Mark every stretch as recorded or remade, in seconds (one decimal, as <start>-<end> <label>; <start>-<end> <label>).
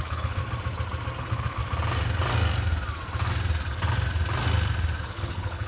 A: 0.0-0.4 remade; 0.4-1.2 recorded; 1.2-1.6 remade; 1.6-5.0 recorded; 5.0-5.7 remade